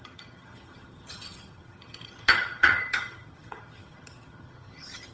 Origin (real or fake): fake